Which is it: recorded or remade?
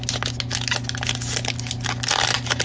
recorded